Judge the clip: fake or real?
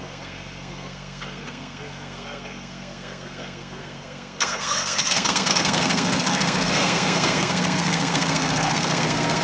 fake